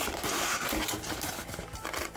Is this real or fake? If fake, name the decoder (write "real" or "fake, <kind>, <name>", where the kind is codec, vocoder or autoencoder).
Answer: real